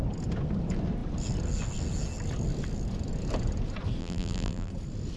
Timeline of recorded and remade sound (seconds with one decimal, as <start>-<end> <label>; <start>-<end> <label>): 0.0-4.0 recorded; 4.0-4.7 remade; 4.7-5.2 recorded